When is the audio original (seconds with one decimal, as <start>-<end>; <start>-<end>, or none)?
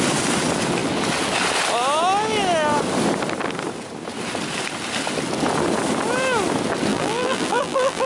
0.0-6.9